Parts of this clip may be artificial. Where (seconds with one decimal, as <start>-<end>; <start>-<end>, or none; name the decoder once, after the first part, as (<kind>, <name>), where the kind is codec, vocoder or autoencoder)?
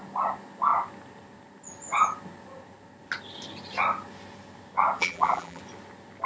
5.0-5.6 (vocoder, BigVGAN v2)